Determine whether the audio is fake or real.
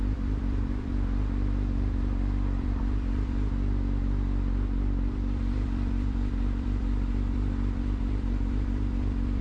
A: fake